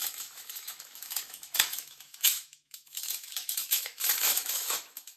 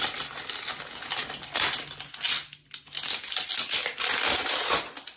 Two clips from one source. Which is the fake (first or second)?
first